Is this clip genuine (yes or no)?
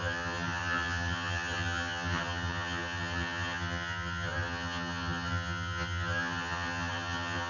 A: no